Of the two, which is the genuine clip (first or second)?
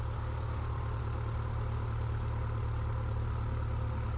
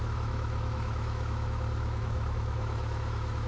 first